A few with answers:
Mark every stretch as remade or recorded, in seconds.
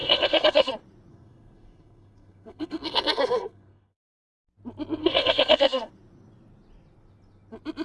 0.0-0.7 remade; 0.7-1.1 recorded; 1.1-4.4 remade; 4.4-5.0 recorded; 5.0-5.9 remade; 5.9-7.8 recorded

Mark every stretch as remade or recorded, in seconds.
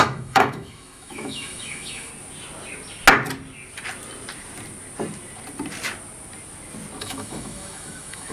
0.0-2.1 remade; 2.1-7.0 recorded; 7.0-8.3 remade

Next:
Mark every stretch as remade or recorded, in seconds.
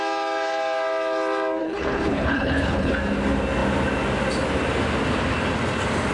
0.0-1.6 recorded; 1.6-2.9 remade; 2.9-6.1 recorded